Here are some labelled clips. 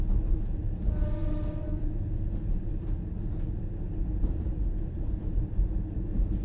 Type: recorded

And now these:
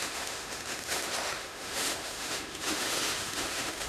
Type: remade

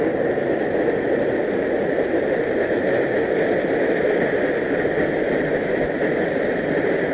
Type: recorded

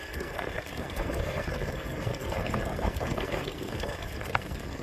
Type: remade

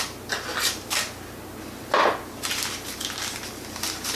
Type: recorded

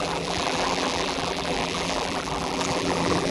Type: remade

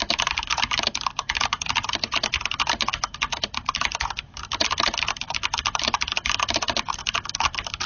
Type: remade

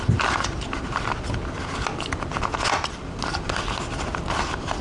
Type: recorded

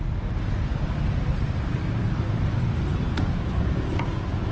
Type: recorded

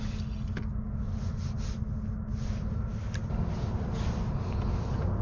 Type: recorded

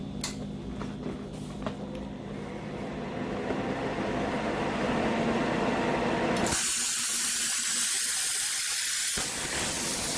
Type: recorded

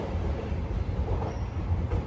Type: recorded